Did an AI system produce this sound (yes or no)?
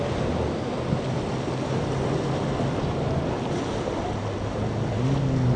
no